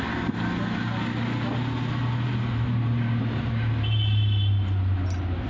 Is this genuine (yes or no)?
yes